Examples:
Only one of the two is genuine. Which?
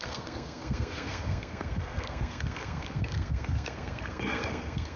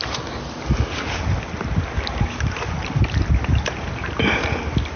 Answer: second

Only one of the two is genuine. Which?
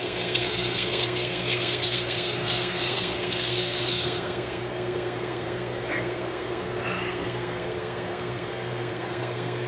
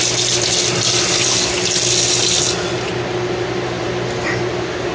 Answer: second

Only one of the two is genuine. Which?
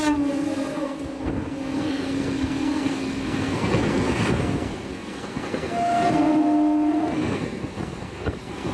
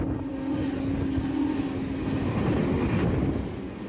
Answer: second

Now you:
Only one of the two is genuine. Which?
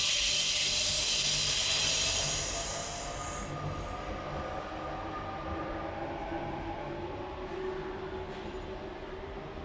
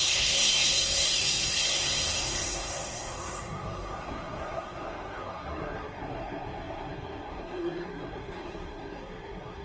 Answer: first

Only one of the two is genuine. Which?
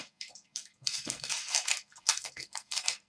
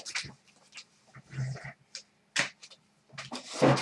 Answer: second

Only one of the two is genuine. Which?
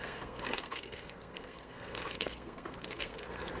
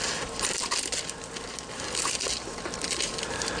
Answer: second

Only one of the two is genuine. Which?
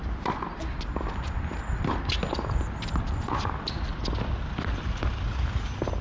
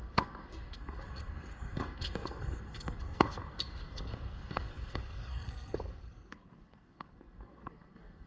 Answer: first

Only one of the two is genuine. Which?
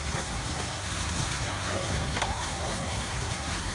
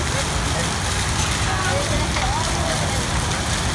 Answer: second